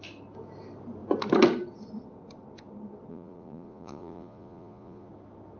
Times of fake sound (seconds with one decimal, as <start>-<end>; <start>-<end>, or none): 3.1-5.1